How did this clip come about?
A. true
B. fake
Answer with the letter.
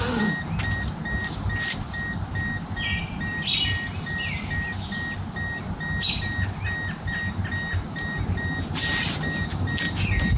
A